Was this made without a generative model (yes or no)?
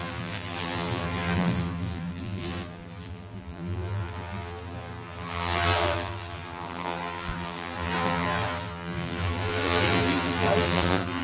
no